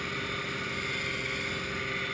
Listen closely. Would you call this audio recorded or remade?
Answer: recorded